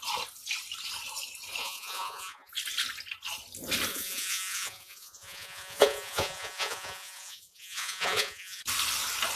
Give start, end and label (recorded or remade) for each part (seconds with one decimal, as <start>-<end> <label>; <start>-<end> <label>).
0.0-1.6 recorded; 1.6-2.5 remade; 2.5-3.9 recorded; 3.9-8.6 remade; 8.6-9.4 recorded